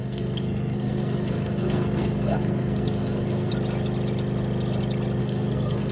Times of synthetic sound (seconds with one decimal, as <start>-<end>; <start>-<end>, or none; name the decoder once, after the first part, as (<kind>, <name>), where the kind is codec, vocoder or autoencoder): 0.0-3.5 (codec, SNAC); 5.2-5.9